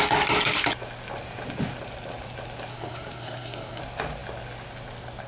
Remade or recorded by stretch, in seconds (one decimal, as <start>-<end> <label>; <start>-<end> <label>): 0.0-2.7 recorded; 2.7-3.8 remade; 3.8-5.3 recorded